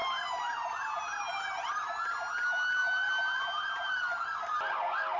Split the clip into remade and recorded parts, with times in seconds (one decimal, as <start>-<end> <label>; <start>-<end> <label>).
0.0-5.2 recorded